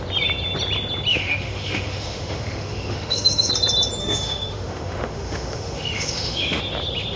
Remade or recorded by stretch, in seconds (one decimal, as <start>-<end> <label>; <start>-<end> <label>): 0.0-1.1 recorded; 1.1-3.5 remade; 3.5-4.0 recorded; 4.0-6.6 remade; 6.6-7.2 recorded